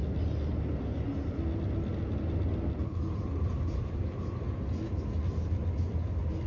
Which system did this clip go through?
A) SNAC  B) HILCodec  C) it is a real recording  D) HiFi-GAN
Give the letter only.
C